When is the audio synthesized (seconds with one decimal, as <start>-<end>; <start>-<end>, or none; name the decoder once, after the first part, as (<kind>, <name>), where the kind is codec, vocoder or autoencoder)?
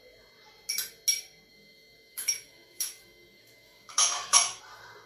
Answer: 1.5-4.6 (autoencoder, DAC-VAE)